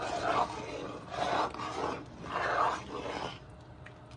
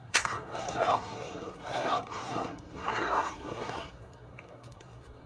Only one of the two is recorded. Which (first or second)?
first